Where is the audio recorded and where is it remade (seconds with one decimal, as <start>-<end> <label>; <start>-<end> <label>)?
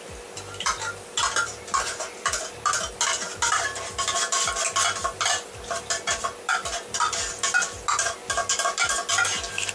0.0-9.7 recorded